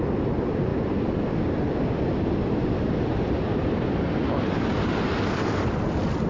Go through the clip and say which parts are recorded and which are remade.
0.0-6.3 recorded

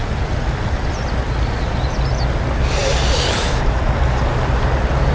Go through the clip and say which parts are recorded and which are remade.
0.0-5.1 recorded

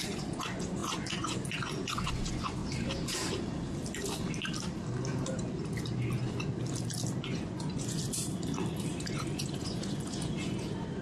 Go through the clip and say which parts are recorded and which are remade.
0.0-2.6 remade; 2.6-7.2 recorded; 7.2-8.0 remade; 8.0-8.9 recorded; 8.9-11.0 remade